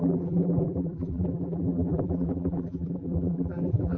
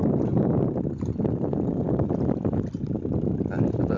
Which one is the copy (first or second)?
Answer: first